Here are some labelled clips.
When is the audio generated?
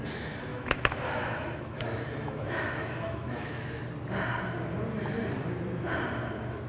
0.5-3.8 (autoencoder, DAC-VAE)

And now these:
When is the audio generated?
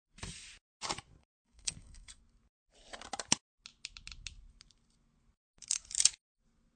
1.2-2.2 (codec, SNAC)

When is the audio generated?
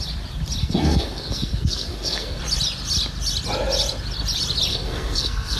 0.6-2.4 (codec, SNAC); 4.7-5.6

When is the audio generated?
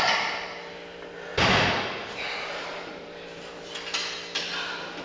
1.3-3.5 (vocoder, BigVGAN v2)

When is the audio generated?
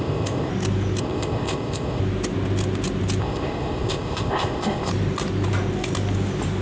0.0-0.5 (codec, ZipCodec); 1.0-2.0; 3.2-4.9